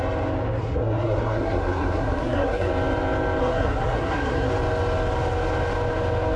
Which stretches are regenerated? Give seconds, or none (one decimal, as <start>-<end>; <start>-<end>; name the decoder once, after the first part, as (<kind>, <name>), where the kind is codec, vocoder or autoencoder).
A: 0.6-2.7 (codec, SNAC); 3.4-4.5